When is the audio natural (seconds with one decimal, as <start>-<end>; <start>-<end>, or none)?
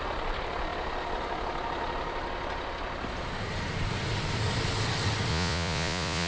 0.0-5.3